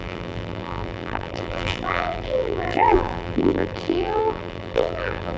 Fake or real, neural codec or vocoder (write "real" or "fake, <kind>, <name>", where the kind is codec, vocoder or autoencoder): fake, vocoder, BigVGAN v2